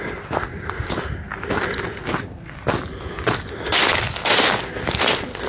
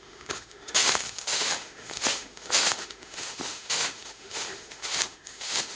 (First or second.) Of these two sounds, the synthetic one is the second